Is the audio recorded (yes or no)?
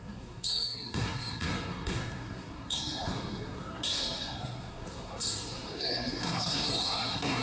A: no